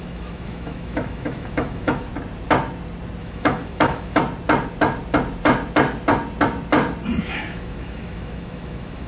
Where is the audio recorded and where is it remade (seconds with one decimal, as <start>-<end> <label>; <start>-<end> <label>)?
0.0-2.1 remade; 2.1-3.2 recorded; 3.2-4.2 remade; 4.2-7.2 recorded; 7.2-9.1 remade